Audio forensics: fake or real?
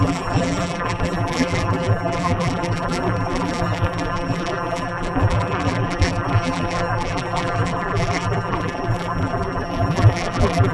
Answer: fake